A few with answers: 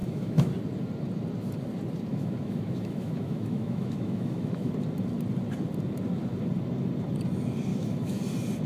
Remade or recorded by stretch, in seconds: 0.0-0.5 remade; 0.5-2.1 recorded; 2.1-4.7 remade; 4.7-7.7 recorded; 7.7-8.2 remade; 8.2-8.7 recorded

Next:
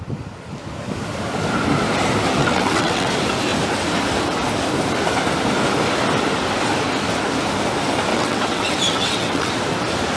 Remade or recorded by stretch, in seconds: 0.0-2.4 recorded; 2.4-3.1 remade; 3.1-8.1 recorded; 8.1-9.5 remade; 9.5-10.2 recorded

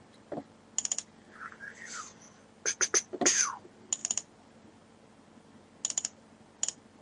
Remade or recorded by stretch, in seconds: 0.0-7.0 recorded

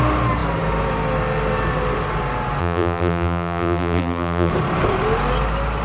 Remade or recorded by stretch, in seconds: 0.0-2.6 recorded; 2.6-4.5 remade; 4.5-5.8 recorded